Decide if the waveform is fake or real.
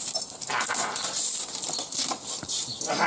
real